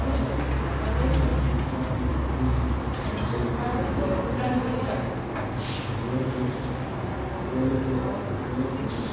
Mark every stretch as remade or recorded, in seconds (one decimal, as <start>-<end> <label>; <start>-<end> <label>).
0.0-9.1 recorded